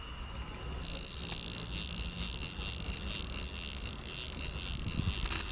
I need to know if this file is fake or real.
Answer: real